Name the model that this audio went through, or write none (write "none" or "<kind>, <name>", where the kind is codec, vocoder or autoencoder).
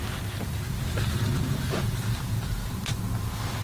none